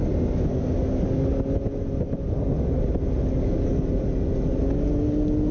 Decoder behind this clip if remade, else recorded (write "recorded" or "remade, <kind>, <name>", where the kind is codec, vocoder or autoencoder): recorded